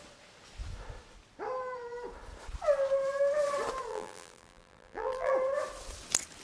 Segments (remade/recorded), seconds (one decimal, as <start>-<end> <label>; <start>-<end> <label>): 0.0-3.9 recorded; 3.9-5.3 remade; 5.3-6.4 recorded